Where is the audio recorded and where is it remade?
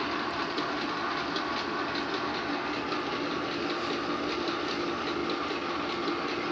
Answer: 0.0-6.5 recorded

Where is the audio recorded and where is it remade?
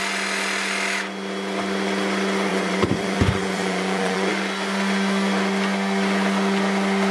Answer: 0.0-2.5 recorded; 2.5-4.3 remade; 4.3-7.1 recorded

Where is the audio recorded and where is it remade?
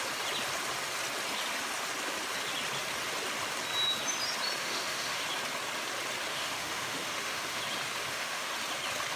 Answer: 0.0-4.6 recorded; 4.6-5.2 remade; 5.2-6.3 recorded; 6.3-7.6 remade; 7.6-8.0 recorded; 8.0-8.5 remade; 8.5-9.2 recorded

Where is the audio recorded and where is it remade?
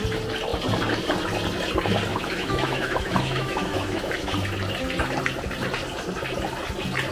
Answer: 0.0-2.1 recorded; 2.1-4.3 remade; 4.3-7.1 recorded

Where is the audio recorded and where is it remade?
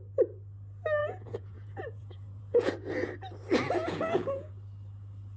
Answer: 0.0-1.0 recorded; 1.0-2.7 remade; 2.7-3.8 recorded; 3.8-4.5 remade; 4.5-5.4 recorded